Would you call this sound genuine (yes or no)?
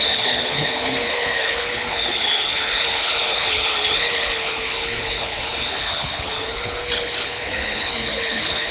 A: no